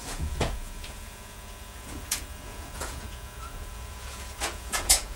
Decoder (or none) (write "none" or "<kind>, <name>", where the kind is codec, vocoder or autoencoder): vocoder, Vocos